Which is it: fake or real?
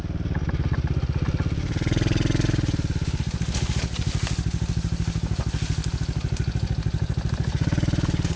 real